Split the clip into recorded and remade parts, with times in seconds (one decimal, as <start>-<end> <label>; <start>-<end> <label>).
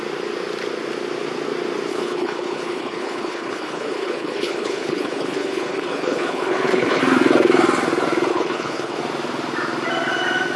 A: 0.0-1.9 recorded; 1.9-7.0 remade; 7.0-8.3 recorded; 8.3-9.0 remade; 9.0-10.6 recorded